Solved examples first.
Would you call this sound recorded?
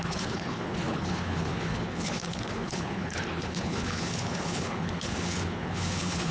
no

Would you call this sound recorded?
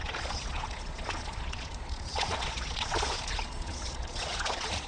no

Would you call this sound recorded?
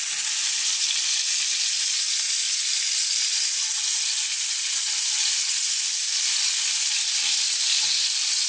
yes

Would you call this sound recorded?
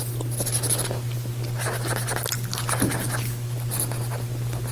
yes